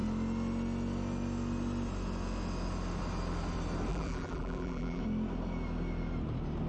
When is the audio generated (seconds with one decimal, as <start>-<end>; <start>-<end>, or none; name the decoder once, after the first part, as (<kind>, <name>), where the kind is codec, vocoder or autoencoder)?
3.9-5.0 (vocoder, BigVGAN v2)

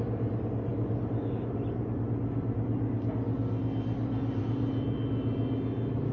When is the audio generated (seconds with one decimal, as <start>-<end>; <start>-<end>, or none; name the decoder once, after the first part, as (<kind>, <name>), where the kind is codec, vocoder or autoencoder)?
none